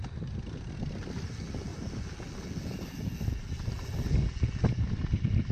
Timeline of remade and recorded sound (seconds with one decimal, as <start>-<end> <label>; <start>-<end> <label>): 0.0-5.5 recorded